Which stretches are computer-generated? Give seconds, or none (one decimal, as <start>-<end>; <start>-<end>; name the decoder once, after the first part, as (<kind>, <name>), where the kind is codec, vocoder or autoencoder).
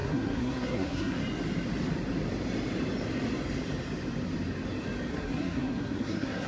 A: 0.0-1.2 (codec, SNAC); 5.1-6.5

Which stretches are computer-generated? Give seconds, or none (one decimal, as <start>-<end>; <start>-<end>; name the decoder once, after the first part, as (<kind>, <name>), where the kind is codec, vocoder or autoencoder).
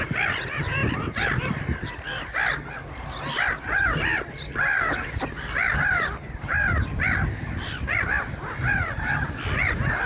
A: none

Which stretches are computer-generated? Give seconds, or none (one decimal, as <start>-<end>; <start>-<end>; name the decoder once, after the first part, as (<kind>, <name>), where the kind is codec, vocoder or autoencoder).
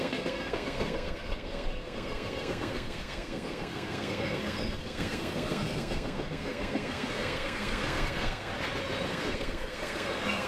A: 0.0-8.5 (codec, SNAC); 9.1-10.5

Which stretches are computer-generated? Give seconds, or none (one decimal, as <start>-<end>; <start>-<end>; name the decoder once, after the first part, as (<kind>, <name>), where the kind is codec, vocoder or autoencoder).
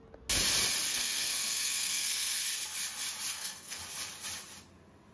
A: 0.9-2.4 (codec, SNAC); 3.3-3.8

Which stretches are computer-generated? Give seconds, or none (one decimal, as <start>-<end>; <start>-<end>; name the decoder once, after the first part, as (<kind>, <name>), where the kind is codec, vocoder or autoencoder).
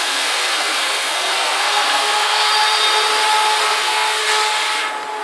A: 0.0-2.5 (codec, SNAC); 3.7-4.2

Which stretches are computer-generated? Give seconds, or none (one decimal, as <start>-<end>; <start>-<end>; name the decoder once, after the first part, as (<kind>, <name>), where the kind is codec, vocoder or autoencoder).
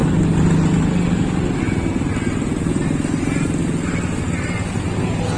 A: none